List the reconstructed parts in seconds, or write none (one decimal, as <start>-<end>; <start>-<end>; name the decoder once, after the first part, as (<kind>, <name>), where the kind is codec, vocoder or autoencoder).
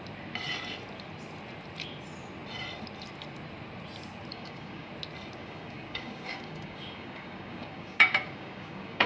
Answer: 4.3-4.9 (codec, DAC); 5.4-9.1